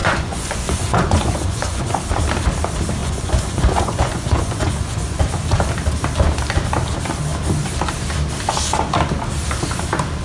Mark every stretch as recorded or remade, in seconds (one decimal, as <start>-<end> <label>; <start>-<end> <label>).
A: 0.0-2.0 remade; 2.0-3.0 recorded; 3.0-5.3 remade; 5.3-10.2 recorded